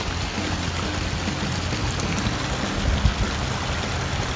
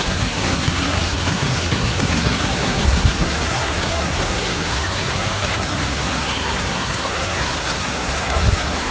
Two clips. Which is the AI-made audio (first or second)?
second